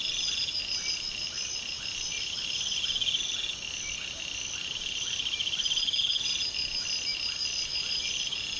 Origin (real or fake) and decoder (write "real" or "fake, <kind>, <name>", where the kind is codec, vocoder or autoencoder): real